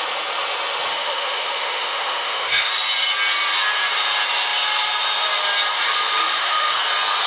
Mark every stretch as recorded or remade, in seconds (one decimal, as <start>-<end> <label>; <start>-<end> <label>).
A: 0.0-0.9 recorded; 0.9-2.7 remade; 2.7-6.2 recorded; 6.2-6.8 remade; 6.8-7.3 recorded